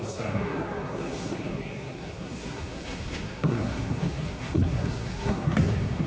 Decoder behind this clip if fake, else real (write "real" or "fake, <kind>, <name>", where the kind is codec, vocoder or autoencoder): fake, codec, SNAC